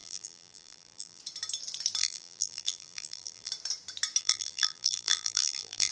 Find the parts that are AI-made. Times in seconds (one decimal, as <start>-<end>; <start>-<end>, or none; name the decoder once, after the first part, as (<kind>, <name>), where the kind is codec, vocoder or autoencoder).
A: 0.0-1.2 (vocoder, BigVGAN v2); 2.0-3.5; 4.2-5.9